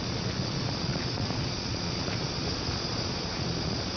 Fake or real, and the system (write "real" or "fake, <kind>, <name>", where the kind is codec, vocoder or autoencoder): fake, vocoder, Vocos